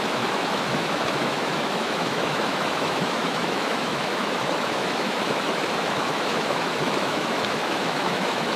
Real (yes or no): no